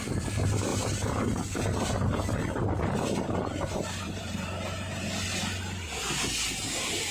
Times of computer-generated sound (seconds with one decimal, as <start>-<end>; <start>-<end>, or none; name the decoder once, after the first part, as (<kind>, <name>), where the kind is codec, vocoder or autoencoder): 0.7-5.0 (vocoder, BigVGAN v2)